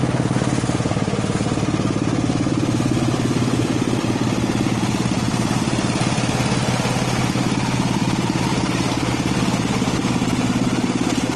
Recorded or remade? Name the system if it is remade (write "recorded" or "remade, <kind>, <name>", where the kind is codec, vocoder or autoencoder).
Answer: recorded